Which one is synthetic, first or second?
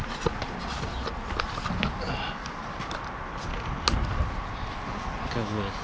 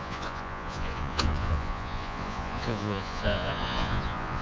second